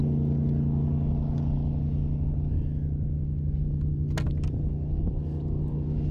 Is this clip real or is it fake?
real